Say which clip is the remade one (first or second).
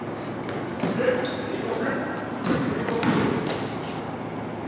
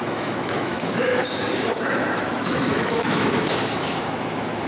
second